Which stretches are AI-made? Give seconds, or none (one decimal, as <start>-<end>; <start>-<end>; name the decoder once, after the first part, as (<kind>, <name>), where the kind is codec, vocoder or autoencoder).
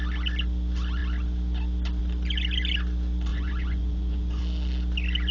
3.3-4.4 (vocoder, Vocos)